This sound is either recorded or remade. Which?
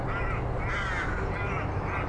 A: recorded